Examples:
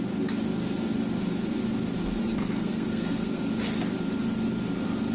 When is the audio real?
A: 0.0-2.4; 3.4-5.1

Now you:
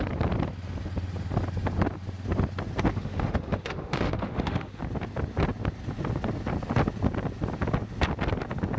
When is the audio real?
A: 0.0-2.9; 4.8-8.8

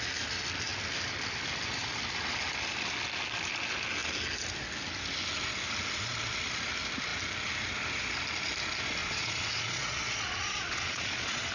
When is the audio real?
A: 0.0-9.0

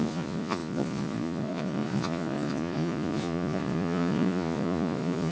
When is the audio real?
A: none